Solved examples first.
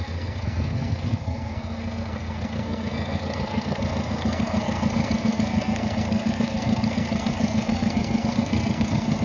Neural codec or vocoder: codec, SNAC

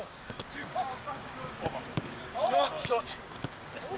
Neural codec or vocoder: codec, DAC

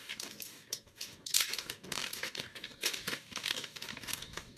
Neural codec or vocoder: codec, DAC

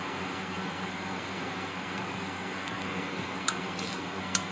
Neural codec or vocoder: codec, SNAC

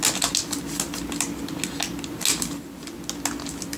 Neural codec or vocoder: none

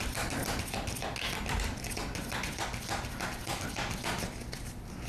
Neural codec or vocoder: none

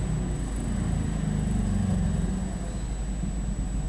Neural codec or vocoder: none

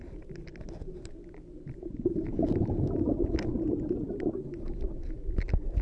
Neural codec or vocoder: none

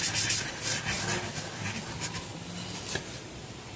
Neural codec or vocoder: none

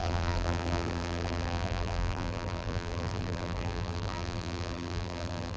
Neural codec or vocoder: vocoder, BigVGAN v2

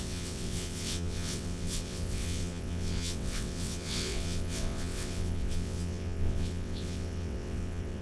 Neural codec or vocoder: vocoder, WaveNeXt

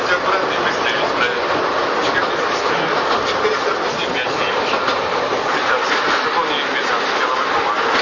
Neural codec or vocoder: none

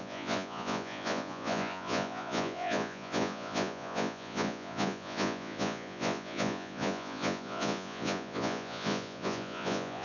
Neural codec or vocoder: vocoder, Vocos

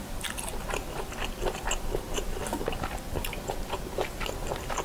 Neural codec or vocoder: none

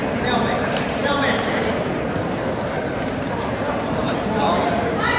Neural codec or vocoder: vocoder, BigVGAN v2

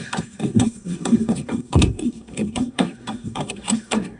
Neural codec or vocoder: codec, SNAC